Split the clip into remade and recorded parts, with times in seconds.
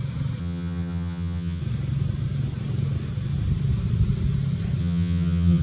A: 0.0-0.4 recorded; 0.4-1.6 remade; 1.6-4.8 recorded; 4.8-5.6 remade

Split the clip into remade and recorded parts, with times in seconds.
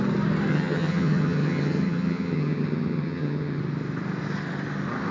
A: 0.0-0.5 recorded; 0.5-3.6 remade; 3.6-5.1 recorded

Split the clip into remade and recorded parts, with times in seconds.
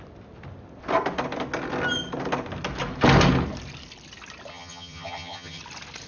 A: 0.0-4.5 recorded; 4.5-5.6 remade; 5.6-6.1 recorded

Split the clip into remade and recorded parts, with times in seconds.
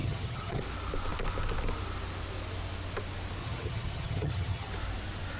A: 0.0-0.6 remade; 0.6-3.4 recorded; 3.4-4.7 remade; 4.7-5.4 recorded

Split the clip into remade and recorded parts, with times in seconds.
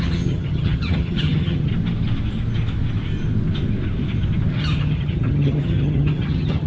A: 0.0-1.7 remade; 1.7-4.5 recorded; 4.5-6.7 remade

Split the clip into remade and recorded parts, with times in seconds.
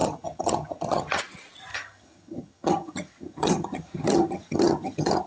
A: 0.0-1.2 remade; 1.2-1.7 recorded; 1.7-5.3 remade